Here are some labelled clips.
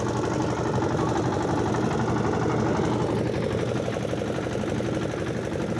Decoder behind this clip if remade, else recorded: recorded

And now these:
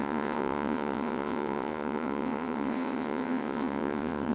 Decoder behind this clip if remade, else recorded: remade, vocoder, WaveNeXt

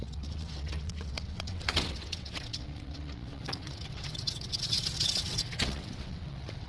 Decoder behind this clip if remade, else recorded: remade, vocoder, WaveNeXt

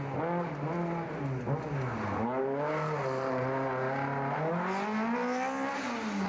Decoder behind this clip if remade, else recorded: recorded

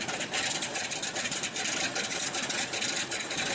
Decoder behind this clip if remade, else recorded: recorded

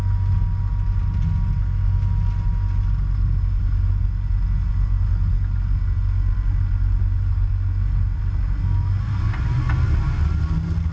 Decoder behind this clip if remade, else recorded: recorded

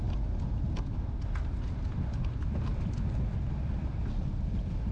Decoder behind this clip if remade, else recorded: recorded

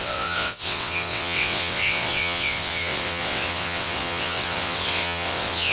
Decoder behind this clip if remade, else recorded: remade, vocoder, WaveNeXt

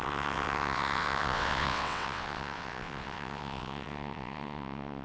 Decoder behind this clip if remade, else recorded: remade, vocoder, WaveNeXt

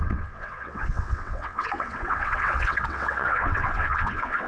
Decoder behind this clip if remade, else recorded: remade, vocoder, WaveNeXt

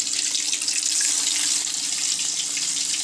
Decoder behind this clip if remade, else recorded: recorded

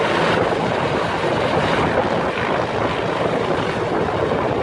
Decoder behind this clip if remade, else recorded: recorded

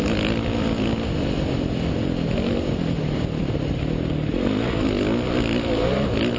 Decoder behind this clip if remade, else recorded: recorded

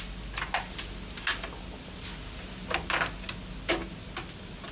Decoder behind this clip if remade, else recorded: recorded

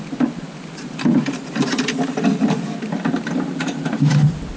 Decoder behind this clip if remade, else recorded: recorded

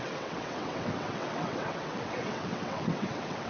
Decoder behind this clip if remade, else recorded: remade, vocoder, WaveNeXt